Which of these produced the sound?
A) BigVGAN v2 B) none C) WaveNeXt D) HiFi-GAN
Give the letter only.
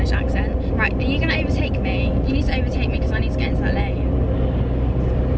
B